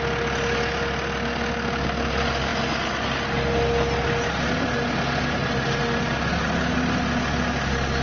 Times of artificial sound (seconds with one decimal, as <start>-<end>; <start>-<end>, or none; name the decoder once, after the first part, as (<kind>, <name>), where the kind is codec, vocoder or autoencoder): none